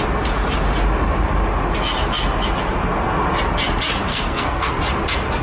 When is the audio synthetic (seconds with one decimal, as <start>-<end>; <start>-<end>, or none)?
4.1-4.8